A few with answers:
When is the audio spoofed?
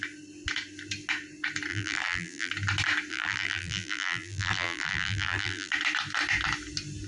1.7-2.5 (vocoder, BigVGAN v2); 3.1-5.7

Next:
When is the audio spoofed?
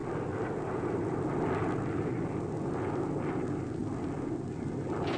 none